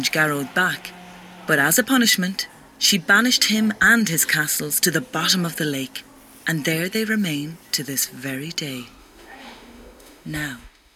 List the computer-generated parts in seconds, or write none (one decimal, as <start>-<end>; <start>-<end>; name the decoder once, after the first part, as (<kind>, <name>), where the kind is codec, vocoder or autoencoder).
9.0-11.0 (autoencoder, DAC-VAE)